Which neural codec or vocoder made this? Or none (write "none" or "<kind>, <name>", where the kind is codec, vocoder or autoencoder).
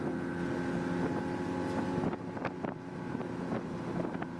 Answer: none